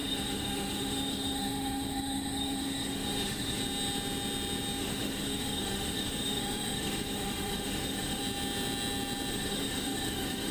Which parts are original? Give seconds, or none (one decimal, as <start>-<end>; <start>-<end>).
3.6-4.8; 8.2-9.3